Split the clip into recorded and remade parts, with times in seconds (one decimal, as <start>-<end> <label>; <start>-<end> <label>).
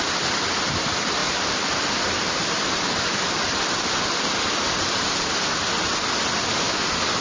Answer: 0.0-7.2 recorded